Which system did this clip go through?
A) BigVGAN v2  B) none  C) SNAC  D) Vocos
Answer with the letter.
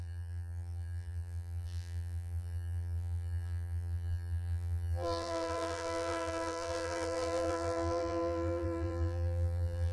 A